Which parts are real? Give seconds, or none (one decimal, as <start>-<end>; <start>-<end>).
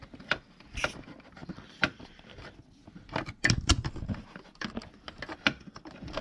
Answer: 0.0-6.2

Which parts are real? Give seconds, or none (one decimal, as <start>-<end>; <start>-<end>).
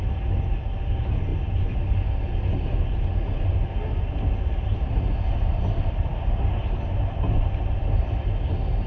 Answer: 0.0-8.9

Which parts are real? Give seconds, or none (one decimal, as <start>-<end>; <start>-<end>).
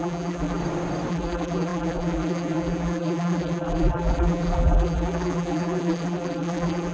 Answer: 0.6-1.1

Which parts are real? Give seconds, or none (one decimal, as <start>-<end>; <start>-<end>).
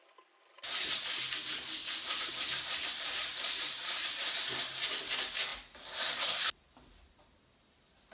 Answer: 0.0-1.8; 4.2-8.1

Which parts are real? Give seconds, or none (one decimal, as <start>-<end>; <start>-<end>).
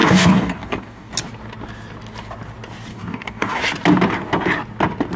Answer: 1.1-2.9; 3.6-5.2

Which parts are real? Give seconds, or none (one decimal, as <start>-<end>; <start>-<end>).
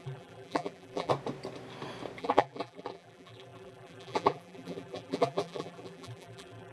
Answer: 1.1-2.2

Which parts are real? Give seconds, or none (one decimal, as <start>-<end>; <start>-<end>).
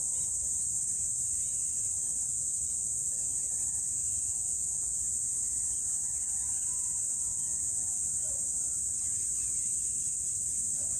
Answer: 0.0-2.3; 3.2-4.0; 5.0-7.3; 8.0-11.0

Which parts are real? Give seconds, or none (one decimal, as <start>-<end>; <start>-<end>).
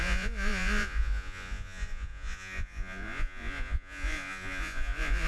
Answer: none